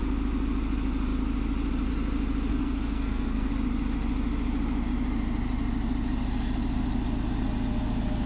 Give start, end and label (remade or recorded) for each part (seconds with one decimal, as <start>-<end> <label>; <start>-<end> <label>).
0.0-2.5 recorded; 2.5-3.5 remade; 3.5-8.3 recorded